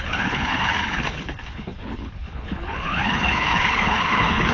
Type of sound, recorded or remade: remade